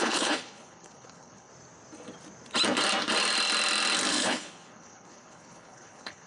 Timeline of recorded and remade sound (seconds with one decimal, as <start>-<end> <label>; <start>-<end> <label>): 0.0-1.5 remade; 1.5-4.1 recorded; 4.1-6.3 remade